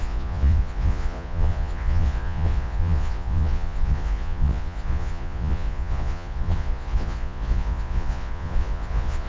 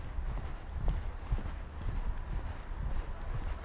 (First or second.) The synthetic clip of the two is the first